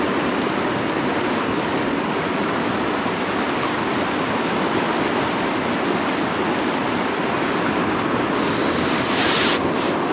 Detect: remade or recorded recorded